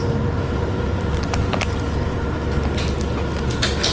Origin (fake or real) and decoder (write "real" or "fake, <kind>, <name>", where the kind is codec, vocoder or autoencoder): real